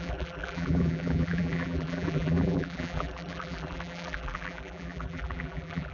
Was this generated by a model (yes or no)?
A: yes